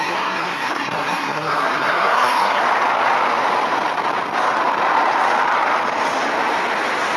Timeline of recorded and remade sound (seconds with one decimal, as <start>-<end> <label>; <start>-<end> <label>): 0.0-2.6 remade; 2.6-7.2 recorded

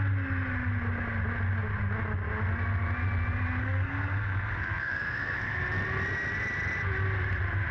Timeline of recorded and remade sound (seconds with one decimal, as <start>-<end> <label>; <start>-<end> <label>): 0.0-3.6 recorded; 3.6-5.6 remade; 5.6-7.7 recorded

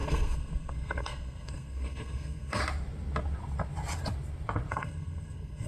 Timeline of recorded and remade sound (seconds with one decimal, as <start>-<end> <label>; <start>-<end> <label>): 0.0-2.6 remade; 2.6-4.7 recorded; 4.7-5.7 remade

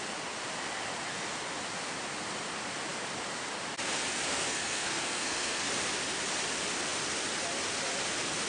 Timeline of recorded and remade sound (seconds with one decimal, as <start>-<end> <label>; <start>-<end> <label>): 0.0-4.3 recorded; 4.3-5.7 remade; 5.7-8.5 recorded

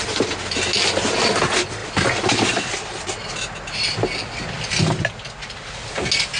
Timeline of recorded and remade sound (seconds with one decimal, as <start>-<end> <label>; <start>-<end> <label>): 0.0-6.4 recorded